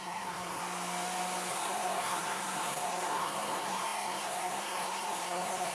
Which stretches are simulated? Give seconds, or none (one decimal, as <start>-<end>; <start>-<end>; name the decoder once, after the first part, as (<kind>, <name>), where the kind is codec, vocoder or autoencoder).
0.0-0.6 (codec, SNAC); 1.5-5.7